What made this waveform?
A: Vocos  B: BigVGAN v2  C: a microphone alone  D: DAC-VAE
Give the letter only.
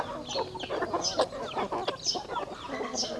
C